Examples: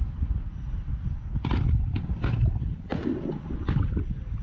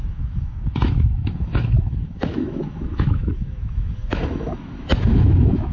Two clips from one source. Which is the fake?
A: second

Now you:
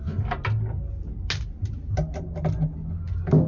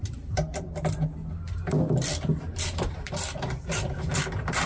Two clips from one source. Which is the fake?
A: second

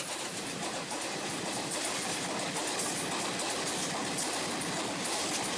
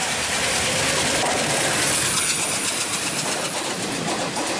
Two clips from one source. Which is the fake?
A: second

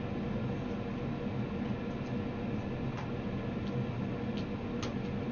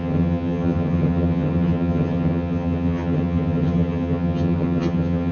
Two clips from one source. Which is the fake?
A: second